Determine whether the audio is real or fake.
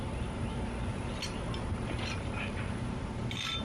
fake